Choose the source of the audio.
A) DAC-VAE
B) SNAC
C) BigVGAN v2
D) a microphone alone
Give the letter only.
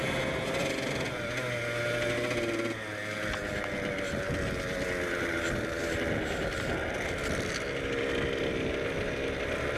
D